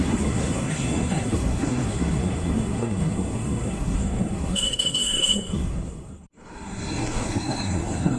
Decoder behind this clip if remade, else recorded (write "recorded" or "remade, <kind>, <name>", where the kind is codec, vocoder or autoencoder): remade, codec, SNAC